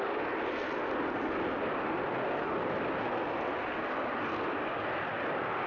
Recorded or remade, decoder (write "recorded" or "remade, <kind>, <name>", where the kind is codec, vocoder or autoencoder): remade, vocoder, BigVGAN v2